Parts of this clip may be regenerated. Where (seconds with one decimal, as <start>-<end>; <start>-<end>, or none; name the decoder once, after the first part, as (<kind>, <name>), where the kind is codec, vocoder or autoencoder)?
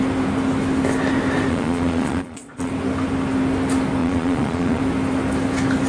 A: 1.5-2.7 (vocoder, Vocos); 4.0-4.8